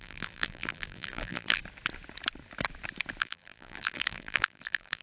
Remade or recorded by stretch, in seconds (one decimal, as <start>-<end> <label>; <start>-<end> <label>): 0.0-1.6 remade; 1.6-3.2 recorded; 3.2-5.0 remade